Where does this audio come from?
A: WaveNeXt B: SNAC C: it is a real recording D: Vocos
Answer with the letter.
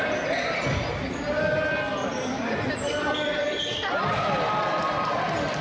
C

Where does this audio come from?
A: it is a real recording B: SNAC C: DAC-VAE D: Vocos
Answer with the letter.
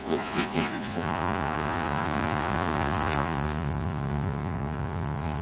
D